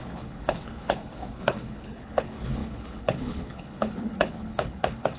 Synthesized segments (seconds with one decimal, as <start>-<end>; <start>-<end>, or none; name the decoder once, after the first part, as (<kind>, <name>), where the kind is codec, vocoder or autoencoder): 0.0-5.2 (codec, HILCodec)